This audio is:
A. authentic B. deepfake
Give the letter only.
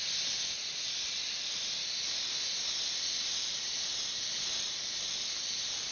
A